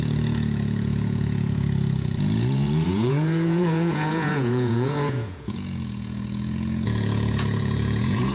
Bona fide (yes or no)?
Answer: no